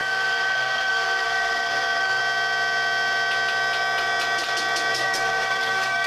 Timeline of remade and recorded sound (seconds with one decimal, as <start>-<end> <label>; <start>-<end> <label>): 0.0-2.2 remade; 2.2-4.9 recorded; 4.9-6.1 remade